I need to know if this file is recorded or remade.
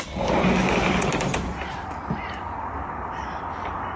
recorded